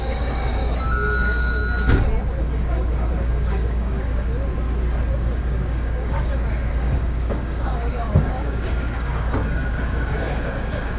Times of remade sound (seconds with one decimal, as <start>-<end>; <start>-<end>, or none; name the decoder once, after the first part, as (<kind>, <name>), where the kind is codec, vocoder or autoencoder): 0.0-1.6 (codec, DAC); 2.4-4.3; 5.1-6.3; 6.8-11.0